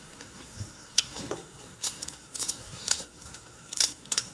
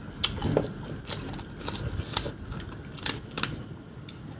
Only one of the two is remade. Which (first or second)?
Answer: first